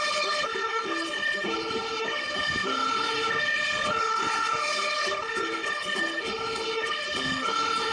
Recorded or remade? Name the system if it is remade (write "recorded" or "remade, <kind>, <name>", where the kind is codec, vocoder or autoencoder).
remade, codec, HILCodec